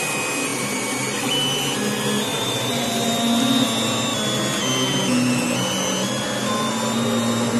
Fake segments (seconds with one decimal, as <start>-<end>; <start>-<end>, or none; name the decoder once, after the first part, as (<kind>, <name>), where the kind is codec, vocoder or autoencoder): 2.3-3.1 (vocoder, BigVGAN v2)